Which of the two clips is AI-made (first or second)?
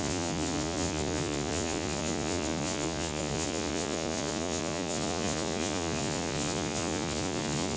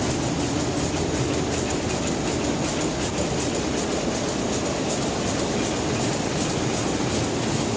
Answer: first